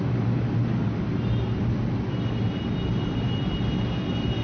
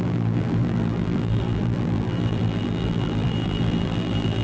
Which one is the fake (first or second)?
second